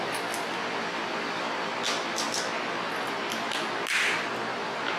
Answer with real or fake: real